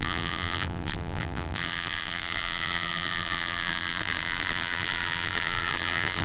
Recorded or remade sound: remade